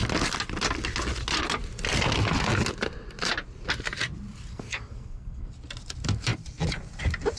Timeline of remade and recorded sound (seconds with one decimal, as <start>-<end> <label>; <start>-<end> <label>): 0.0-4.5 recorded; 4.5-5.5 remade; 5.5-7.4 recorded